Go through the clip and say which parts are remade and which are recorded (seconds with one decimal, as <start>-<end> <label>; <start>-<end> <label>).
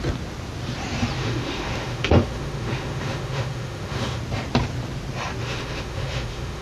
0.0-1.2 recorded; 1.2-4.2 remade; 4.2-5.4 recorded; 5.4-6.6 remade